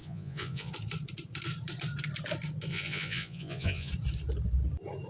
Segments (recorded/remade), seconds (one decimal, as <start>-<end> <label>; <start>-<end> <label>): 0.0-0.7 remade; 0.7-2.7 recorded; 2.7-3.9 remade; 3.9-5.1 recorded